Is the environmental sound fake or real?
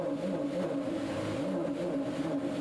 fake